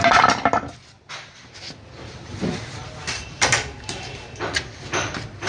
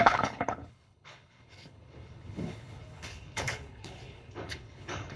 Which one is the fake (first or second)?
second